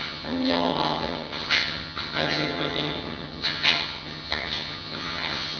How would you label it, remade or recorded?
remade